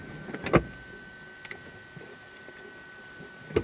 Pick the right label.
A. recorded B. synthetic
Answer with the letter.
A